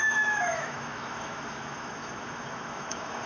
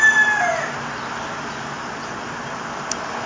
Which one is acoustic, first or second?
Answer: second